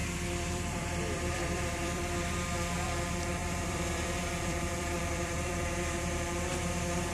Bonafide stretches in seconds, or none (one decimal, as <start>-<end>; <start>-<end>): 2.3-3.4; 6.1-7.1